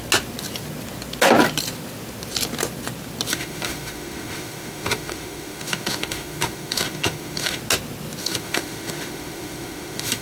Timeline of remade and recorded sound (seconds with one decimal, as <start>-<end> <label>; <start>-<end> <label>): 0.0-3.3 recorded; 3.3-7.6 remade; 7.6-8.2 recorded; 8.2-10.2 remade